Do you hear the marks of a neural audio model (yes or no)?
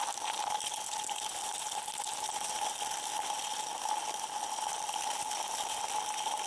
no